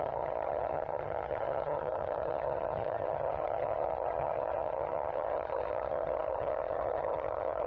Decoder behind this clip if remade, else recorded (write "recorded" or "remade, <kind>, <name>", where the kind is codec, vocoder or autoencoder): remade, vocoder, HiFi-GAN